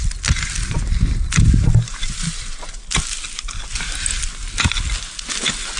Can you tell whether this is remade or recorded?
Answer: recorded